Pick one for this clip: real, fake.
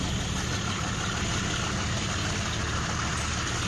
real